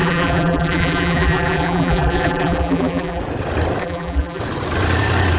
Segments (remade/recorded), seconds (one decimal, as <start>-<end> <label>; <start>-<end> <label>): 0.0-3.2 remade; 3.2-3.8 recorded; 3.8-4.4 remade; 4.4-5.4 recorded